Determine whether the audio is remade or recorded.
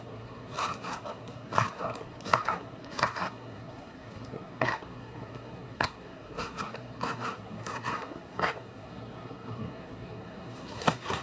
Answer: remade